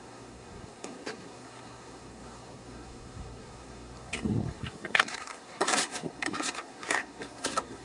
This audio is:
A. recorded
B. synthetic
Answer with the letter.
B